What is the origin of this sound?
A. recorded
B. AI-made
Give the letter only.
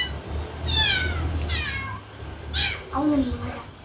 A